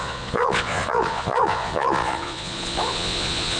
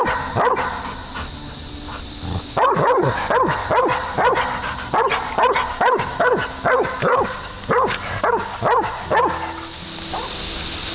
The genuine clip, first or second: second